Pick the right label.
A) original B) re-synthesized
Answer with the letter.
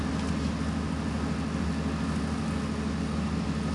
A